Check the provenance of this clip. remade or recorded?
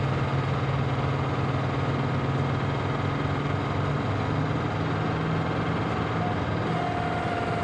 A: recorded